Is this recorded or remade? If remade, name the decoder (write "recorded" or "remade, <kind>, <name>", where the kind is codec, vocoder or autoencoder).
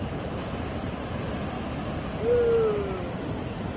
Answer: recorded